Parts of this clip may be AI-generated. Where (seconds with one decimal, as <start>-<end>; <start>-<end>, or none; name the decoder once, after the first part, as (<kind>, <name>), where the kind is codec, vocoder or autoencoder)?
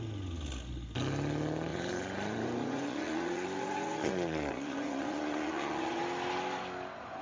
1.7-6.0 (vocoder, Vocos)